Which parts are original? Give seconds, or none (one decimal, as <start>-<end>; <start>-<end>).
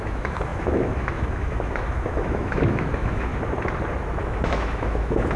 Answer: 3.3-4.2